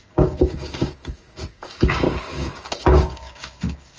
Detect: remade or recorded remade